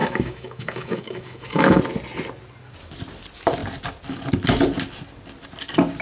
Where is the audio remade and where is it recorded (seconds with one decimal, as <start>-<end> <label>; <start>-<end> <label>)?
0.0-1.8 remade; 1.8-6.0 recorded